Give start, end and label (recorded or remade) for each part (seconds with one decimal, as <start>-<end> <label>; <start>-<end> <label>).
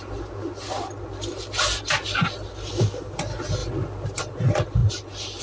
0.0-3.6 recorded; 3.6-4.2 remade; 4.2-5.4 recorded